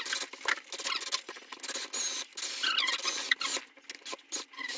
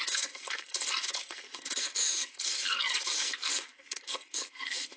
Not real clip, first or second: second